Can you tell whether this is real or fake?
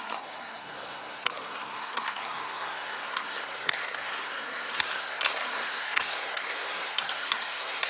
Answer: fake